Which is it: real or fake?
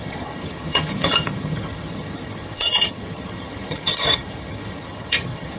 fake